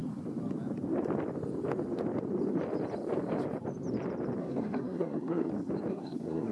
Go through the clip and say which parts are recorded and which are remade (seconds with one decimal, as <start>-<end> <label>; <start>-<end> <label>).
0.0-4.4 recorded; 4.4-5.5 remade; 5.5-5.9 recorded; 5.9-6.5 remade